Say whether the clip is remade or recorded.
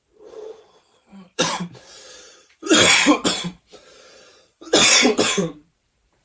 remade